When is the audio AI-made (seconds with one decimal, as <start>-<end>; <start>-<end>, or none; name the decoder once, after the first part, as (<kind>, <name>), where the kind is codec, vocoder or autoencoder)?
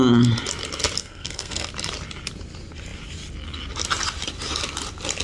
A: 1.0-1.7 (codec, SNAC)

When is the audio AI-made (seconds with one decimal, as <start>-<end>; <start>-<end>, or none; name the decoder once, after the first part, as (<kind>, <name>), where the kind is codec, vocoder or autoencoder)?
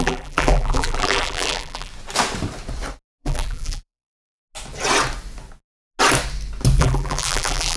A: 0.0-1.9 (vocoder, BigVGAN v2); 3.2-4.4; 6.8-7.8